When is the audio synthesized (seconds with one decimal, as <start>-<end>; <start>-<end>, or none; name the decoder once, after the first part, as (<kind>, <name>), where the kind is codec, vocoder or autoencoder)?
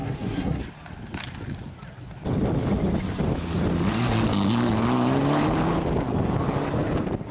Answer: 0.0-0.6 (codec, SNAC)